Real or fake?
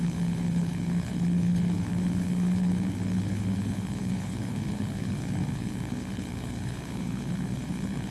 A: fake